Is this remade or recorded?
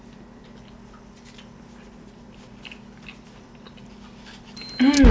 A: recorded